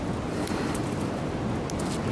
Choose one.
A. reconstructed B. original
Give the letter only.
B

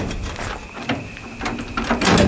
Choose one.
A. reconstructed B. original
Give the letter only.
B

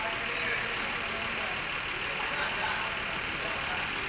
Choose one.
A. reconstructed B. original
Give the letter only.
B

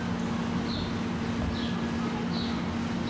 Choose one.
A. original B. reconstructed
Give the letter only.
A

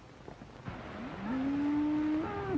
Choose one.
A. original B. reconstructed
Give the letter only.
A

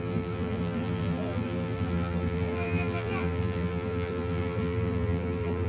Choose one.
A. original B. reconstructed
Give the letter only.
B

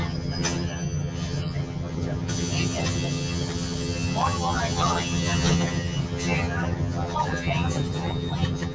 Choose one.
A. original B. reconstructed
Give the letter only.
B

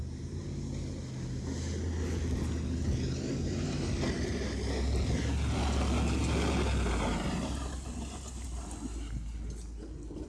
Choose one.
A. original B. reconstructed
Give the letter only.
A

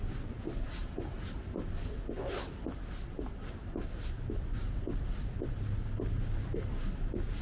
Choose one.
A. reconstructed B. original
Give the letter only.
B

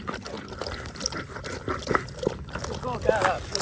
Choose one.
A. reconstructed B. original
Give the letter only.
B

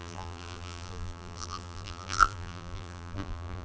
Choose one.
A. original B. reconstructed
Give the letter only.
B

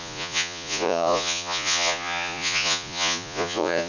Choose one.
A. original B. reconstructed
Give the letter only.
B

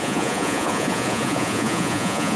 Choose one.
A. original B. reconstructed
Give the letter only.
B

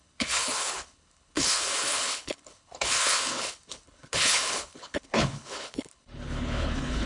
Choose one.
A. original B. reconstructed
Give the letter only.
B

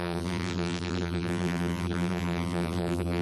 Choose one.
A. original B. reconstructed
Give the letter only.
B